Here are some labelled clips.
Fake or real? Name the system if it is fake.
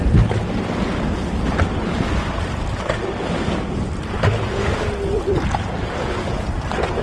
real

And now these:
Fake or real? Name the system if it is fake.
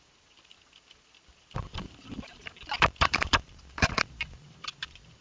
fake, vocoder, BigVGAN v2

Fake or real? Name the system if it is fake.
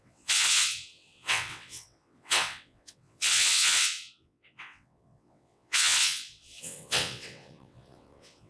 fake, vocoder, WaveNeXt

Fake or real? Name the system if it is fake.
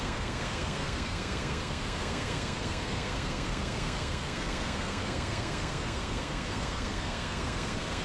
fake, codec, SNAC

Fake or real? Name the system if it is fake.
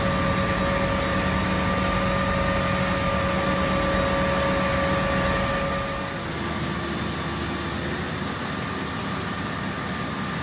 real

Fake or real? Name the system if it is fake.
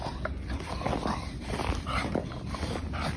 real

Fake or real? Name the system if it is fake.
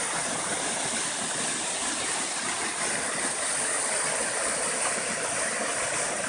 real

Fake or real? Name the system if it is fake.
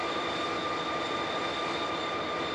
real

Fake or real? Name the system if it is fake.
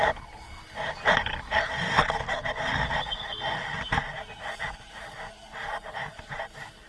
real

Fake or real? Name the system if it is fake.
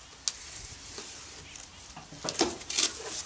real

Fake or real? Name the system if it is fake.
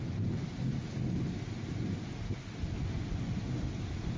real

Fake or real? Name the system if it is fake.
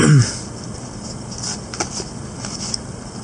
real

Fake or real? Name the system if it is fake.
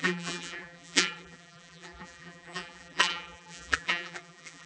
fake, vocoder, BigVGAN v2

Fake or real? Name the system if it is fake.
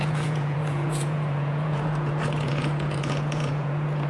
fake, vocoder, Vocos